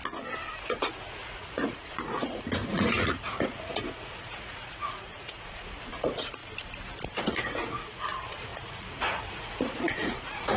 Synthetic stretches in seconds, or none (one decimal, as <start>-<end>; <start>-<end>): 0.6-6.4; 7.2-10.6

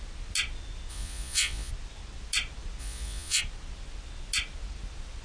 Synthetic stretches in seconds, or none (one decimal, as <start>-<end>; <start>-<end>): 0.9-1.7; 2.8-3.4

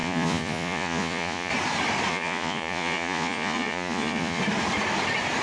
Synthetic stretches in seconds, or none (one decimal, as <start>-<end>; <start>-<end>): 0.0-1.5; 2.1-4.4

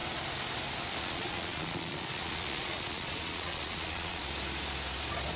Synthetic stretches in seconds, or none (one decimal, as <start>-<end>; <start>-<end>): 1.0-4.2

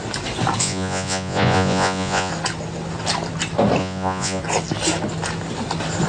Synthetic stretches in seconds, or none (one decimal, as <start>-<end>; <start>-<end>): 0.6-2.3; 3.8-4.4

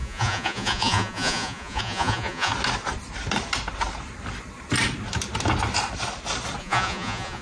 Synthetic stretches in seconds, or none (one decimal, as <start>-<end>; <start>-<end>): 0.0-2.5; 6.6-7.4